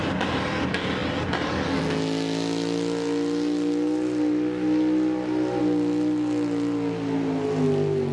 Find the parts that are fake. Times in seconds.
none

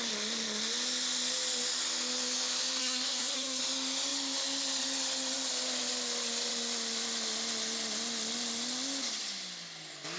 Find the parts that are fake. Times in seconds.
2.8-3.6 (codec, SNAC)

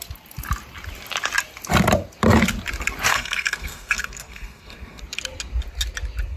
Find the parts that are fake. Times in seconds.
3.1-5.0 (codec, SNAC)

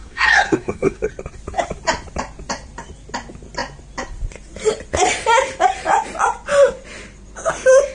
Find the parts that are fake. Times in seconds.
0.0-1.1 (codec, SNAC)

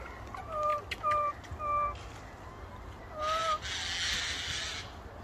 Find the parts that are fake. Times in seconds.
none

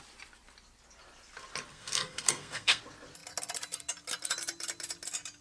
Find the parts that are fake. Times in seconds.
1.7-2.8 (codec, SNAC)

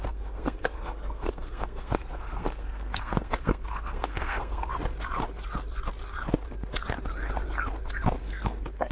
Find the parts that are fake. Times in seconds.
0.0-4.7 (codec, SNAC); 8.2-8.9

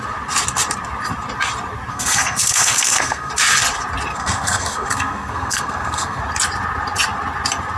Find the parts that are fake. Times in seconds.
1.9-3.3 (codec, SNAC); 4.1-6.2